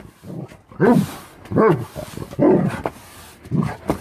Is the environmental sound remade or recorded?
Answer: recorded